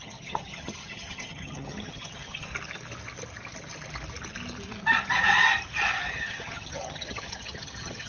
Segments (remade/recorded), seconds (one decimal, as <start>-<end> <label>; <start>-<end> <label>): 0.0-2.5 remade; 2.5-6.1 recorded; 6.1-8.1 remade